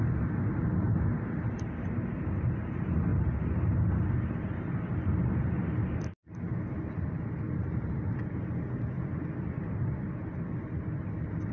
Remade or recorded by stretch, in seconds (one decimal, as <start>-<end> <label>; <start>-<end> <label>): 0.0-11.5 recorded